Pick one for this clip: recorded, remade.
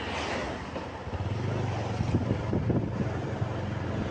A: recorded